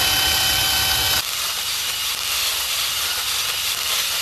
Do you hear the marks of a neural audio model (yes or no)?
no